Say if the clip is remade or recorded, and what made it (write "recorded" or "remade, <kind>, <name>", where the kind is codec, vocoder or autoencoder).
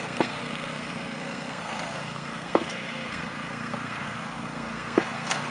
remade, codec, SNAC